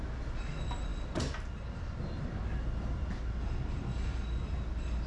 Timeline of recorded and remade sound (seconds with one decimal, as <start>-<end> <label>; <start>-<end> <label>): 0.0-5.1 recorded